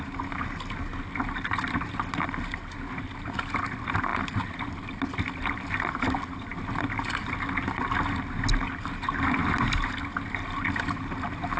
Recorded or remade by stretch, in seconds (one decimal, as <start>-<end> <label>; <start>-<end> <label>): 0.0-11.6 recorded